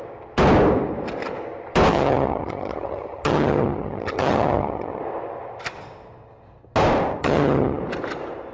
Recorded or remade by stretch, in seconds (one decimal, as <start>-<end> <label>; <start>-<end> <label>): 0.0-1.9 recorded; 1.9-5.0 remade; 5.0-7.2 recorded; 7.2-7.8 remade; 7.8-8.5 recorded